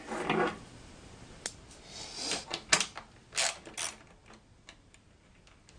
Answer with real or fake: real